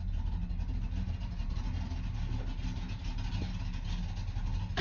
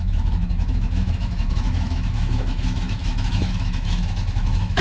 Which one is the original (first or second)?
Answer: first